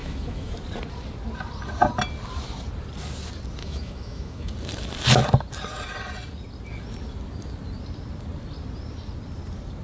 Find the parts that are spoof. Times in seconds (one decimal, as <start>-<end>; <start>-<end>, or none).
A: 0.0-0.5; 3.6-4.5